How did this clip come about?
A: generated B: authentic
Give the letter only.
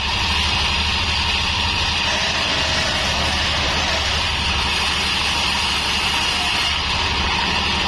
B